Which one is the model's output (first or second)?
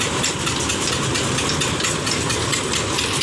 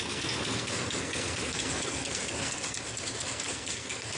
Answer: second